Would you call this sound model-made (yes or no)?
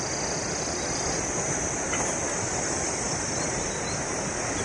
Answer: no